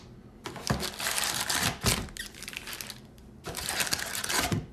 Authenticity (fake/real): real